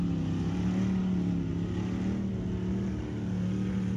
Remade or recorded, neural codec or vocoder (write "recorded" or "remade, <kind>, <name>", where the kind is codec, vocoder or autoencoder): recorded